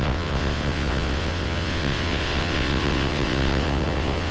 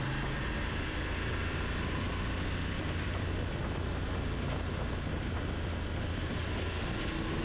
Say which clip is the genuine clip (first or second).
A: second